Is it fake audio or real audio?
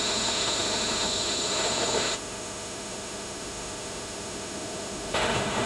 fake